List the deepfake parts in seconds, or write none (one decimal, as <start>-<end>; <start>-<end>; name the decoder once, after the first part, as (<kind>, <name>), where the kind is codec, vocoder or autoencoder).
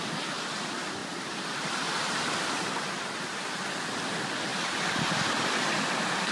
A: 1.0-2.5 (vocoder, BigVGAN v2)